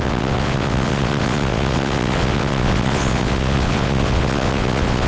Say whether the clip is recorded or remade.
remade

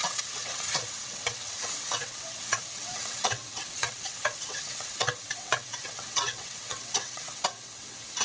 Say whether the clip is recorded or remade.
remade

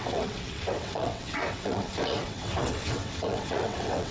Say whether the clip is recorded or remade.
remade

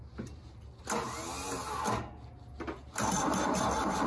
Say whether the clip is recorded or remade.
recorded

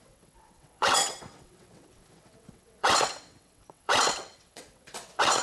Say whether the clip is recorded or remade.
remade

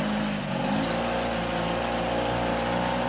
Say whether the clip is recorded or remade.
recorded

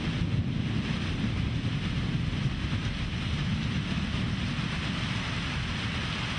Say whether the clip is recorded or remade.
recorded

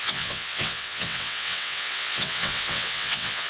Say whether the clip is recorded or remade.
remade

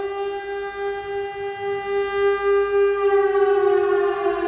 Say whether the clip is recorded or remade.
recorded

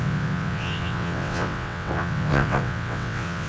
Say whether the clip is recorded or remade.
remade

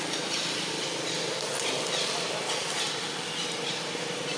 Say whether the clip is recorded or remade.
recorded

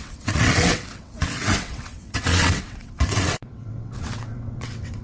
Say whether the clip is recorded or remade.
remade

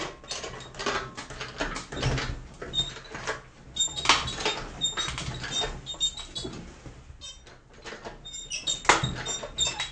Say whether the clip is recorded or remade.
recorded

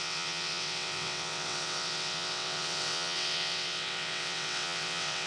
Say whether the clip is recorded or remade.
remade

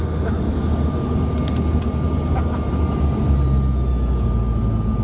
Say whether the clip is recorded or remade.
recorded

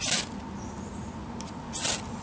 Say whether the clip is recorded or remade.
recorded